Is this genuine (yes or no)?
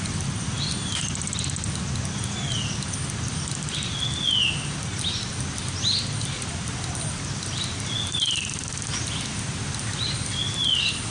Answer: yes